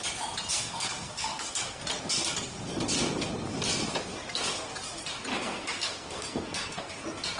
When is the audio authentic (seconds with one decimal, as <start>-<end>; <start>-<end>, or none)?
0.0-0.5; 1.8-5.3; 6.9-7.4